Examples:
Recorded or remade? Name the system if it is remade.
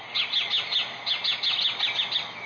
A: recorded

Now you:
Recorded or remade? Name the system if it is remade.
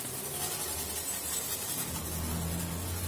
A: recorded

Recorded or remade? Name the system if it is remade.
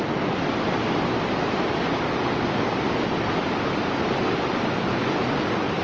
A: recorded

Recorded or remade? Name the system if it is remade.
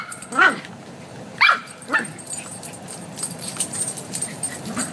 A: remade, vocoder, BigVGAN v2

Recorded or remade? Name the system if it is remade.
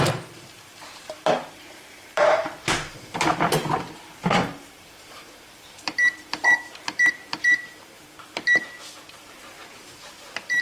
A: remade, vocoder, BigVGAN v2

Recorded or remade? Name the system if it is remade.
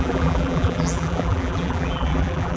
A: remade, vocoder, BigVGAN v2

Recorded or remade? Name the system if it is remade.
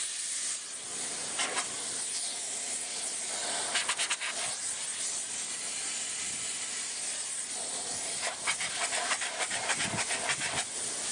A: recorded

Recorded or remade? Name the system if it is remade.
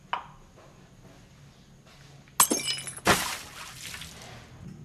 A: recorded